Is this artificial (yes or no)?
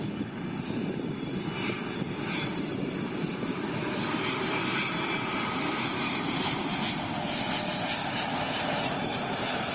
yes